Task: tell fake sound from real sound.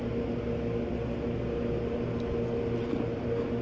real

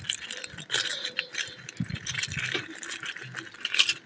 real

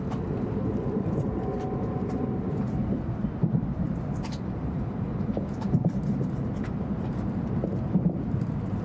fake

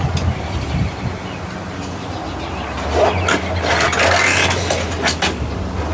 real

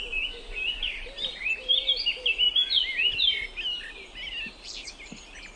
real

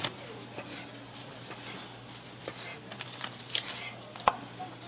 real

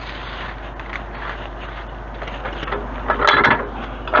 real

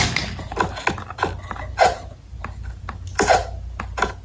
real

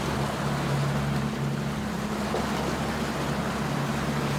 real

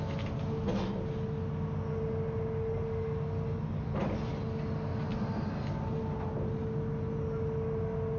real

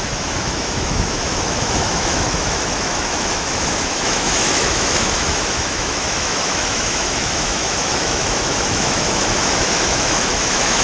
fake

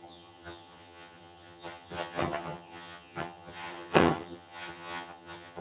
fake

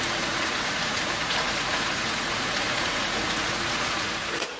fake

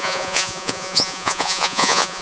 fake